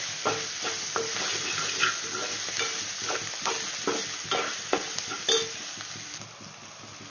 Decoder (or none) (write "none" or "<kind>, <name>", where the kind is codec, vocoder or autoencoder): none